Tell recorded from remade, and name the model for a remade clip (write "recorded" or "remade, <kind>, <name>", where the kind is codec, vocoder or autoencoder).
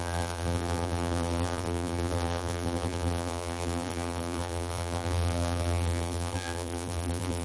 remade, vocoder, BigVGAN v2